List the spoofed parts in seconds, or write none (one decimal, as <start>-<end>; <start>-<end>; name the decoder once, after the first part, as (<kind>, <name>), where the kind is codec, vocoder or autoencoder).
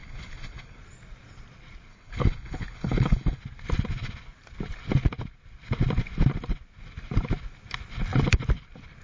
0.0-0.8 (codec, HILCodec); 1.9-3.4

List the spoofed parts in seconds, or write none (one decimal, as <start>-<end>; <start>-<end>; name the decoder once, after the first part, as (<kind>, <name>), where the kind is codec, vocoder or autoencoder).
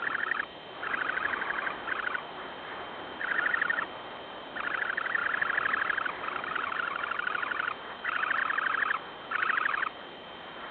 0.0-5.2 (vocoder, BigVGAN v2); 6.5-8.4; 9.3-10.7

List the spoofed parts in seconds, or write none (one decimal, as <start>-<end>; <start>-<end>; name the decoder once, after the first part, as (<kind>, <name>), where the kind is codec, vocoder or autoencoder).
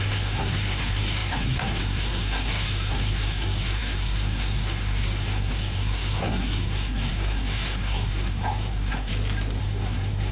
0.0-9.1 (codec, SNAC); 9.6-10.3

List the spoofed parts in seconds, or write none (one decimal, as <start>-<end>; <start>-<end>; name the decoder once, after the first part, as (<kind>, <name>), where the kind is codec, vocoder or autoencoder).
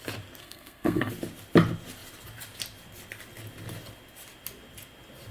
0.4-1.1 (codec, SNAC)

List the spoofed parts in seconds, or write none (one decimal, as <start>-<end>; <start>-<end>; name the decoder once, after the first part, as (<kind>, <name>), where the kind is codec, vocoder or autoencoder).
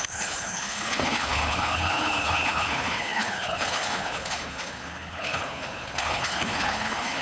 0.0-7.2 (codec, HILCodec)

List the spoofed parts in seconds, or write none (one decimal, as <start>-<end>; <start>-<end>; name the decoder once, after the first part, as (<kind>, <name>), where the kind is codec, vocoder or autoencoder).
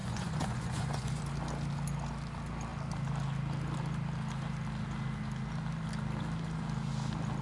0.0-1.2 (vocoder, Vocos)